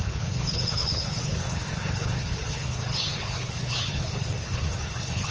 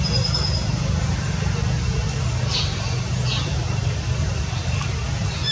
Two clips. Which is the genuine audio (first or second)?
second